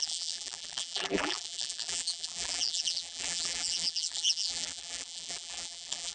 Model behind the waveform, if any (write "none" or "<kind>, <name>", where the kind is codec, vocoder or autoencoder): vocoder, BigVGAN v2